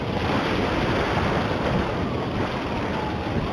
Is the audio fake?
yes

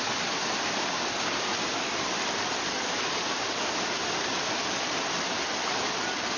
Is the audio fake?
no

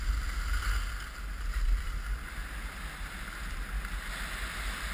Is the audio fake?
no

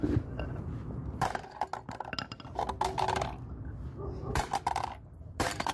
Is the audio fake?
no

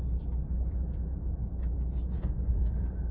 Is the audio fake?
no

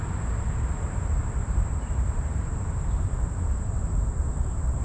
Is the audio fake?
yes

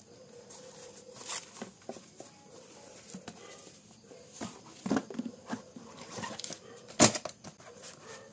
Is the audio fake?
no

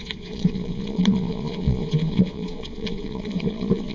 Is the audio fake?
yes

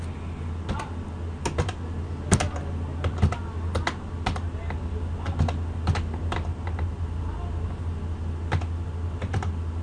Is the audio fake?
no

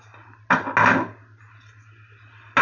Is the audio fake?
no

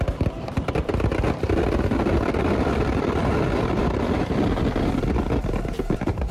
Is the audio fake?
yes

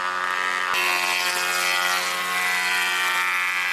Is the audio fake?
no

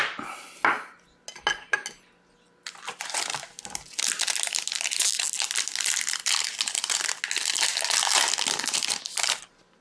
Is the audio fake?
no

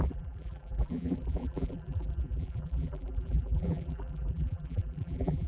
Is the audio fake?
yes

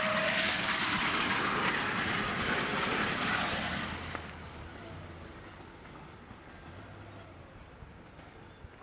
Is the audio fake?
no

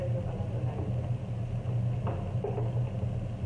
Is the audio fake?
no